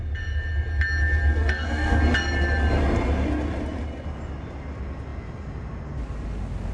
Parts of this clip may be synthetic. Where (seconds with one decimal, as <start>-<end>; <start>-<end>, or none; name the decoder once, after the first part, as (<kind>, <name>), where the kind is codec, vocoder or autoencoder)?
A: 1.3-2.0 (codec, SNAC)